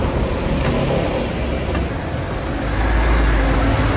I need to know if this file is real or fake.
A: real